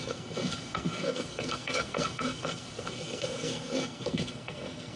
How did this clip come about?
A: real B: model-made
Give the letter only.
B